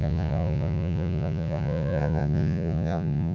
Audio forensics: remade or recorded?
remade